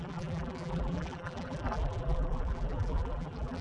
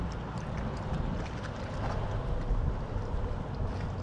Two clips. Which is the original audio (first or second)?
second